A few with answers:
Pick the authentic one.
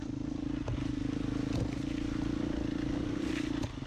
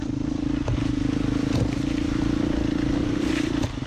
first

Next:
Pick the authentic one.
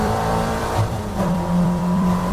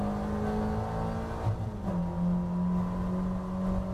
second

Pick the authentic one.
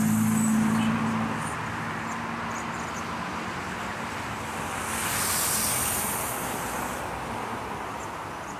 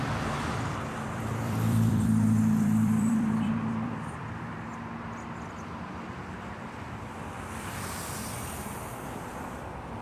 first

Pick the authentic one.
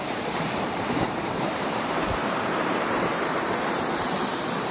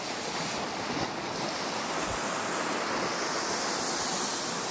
second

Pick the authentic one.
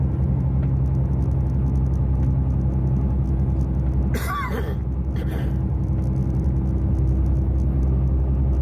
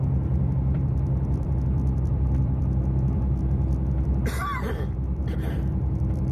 first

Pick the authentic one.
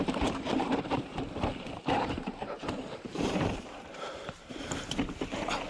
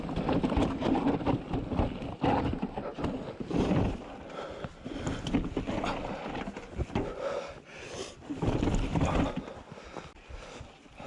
second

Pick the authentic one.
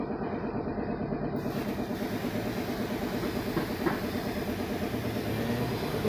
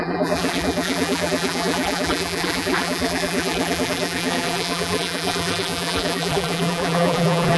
first